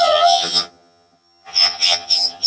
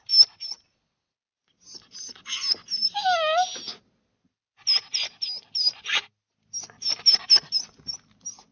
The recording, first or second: second